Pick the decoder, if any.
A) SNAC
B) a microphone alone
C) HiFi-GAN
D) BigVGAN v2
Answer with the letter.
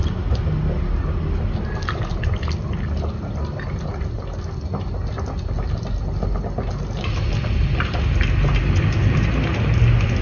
B